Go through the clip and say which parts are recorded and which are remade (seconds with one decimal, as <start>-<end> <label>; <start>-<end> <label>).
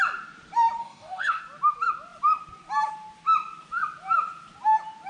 0.0-0.8 recorded; 0.8-1.4 remade; 1.4-5.1 recorded